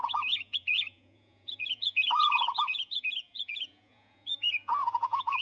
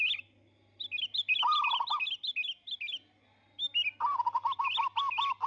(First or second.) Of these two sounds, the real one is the second